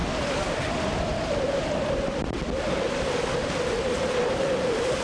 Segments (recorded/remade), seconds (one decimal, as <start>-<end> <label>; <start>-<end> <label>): 0.0-5.0 recorded